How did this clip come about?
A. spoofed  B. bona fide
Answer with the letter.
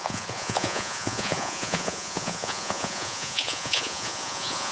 A